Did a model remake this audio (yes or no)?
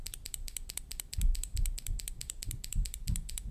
yes